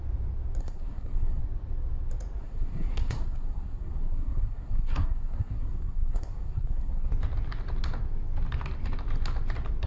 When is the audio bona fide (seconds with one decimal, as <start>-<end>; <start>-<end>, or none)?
0.0-0.6; 1.4-2.4; 7.1-9.9